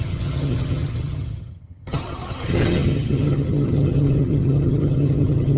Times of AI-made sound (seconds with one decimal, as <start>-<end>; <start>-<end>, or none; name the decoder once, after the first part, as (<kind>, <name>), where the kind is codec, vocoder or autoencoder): 0.0-5.6 (vocoder, HiFi-GAN)